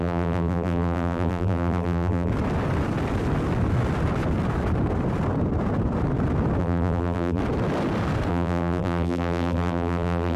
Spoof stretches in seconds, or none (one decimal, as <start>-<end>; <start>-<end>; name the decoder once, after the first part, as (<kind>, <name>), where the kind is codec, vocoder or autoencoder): 0.0-2.3 (vocoder, BigVGAN v2); 6.6-7.4; 8.3-10.4